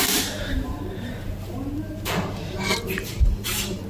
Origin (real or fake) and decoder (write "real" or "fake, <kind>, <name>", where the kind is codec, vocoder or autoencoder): fake, vocoder, BigVGAN v2